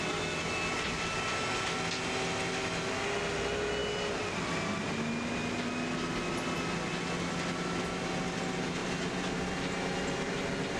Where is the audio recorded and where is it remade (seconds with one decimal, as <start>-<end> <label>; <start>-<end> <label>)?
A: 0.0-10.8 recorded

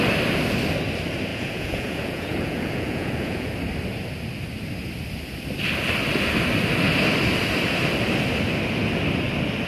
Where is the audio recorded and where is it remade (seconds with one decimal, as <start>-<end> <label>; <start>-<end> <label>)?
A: 0.0-1.3 recorded; 1.3-3.5 remade; 3.5-9.7 recorded

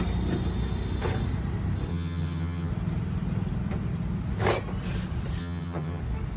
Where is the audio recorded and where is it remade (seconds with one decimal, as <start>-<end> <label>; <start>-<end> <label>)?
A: 0.0-1.9 recorded; 1.9-2.7 remade; 2.7-5.4 recorded; 5.4-6.0 remade; 6.0-6.4 recorded

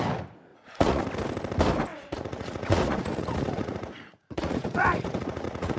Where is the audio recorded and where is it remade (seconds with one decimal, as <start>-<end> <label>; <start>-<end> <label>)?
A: 0.0-0.5 recorded; 0.5-1.0 remade; 1.0-1.9 recorded; 1.9-5.8 remade

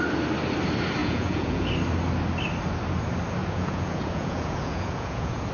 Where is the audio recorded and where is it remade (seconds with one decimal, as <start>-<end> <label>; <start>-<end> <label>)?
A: 0.0-1.0 recorded; 1.0-1.7 remade; 1.7-3.4 recorded; 3.4-5.5 remade

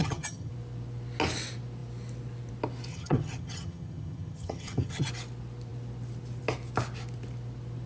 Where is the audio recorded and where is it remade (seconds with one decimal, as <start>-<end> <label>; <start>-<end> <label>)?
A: 0.0-0.5 remade; 0.5-2.9 recorded; 2.9-5.1 remade; 5.1-7.9 recorded